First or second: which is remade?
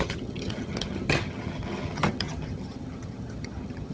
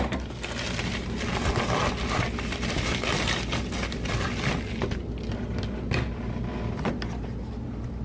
first